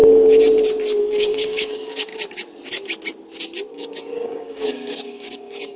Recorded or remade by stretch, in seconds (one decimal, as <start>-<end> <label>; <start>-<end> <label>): 0.0-1.0 recorded; 1.0-2.1 remade; 2.1-3.7 recorded; 3.7-5.8 remade